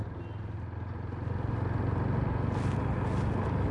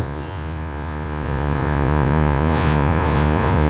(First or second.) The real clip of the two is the first